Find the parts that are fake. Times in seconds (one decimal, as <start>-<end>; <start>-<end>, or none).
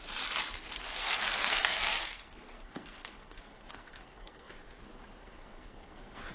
1.0-4.8; 5.2-6.3